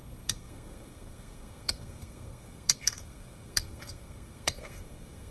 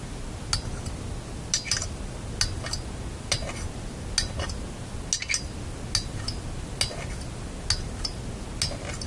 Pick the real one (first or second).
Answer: second